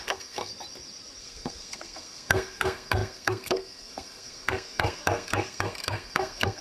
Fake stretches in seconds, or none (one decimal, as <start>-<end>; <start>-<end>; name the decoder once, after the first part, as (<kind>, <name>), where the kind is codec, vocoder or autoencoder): 0.0-0.5 (codec, SNAC); 1.2-6.6